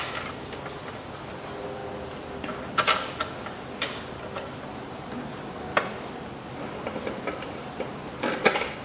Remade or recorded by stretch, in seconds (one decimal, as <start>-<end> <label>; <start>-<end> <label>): 0.0-8.8 recorded